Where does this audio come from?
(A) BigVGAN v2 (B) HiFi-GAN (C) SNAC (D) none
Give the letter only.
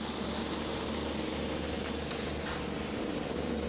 D